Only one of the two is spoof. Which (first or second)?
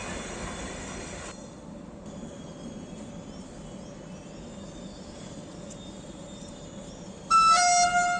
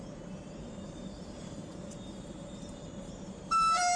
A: second